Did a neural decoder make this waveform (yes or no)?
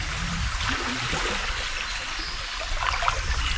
no